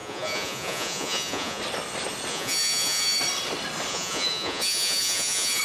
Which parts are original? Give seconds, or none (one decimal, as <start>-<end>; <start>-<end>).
1.6-2.3; 3.2-3.9